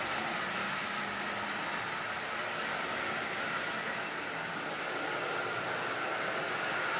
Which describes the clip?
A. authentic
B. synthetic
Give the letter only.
A